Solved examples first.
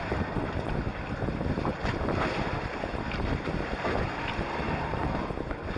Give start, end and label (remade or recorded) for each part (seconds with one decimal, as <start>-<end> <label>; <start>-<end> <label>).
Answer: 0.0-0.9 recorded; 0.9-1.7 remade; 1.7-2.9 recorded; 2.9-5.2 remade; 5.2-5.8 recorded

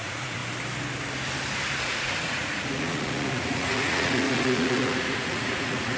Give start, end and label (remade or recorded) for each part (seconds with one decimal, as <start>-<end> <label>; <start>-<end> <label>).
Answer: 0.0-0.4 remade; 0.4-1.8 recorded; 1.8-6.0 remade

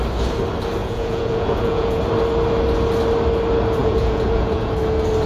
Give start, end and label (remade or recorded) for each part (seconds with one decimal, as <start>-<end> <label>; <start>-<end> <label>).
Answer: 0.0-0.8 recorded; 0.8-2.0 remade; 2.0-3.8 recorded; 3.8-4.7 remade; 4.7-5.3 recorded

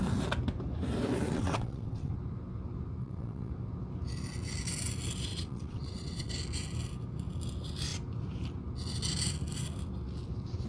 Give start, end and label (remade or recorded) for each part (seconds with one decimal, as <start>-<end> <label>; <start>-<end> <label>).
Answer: 0.0-1.3 recorded; 1.3-2.1 remade; 2.1-3.0 recorded; 3.0-3.5 remade; 3.5-5.3 recorded; 5.3-6.3 remade; 6.3-10.7 recorded

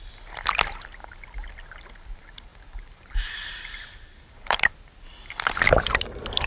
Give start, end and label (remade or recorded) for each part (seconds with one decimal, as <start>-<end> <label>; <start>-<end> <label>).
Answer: 0.0-2.5 recorded; 2.5-6.5 remade

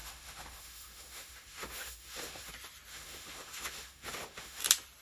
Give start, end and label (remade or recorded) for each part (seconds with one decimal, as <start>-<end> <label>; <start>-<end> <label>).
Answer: 0.0-2.5 remade; 2.5-2.9 recorded; 2.9-4.6 remade; 4.6-5.0 recorded